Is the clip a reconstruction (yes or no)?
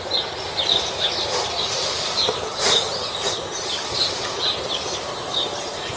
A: no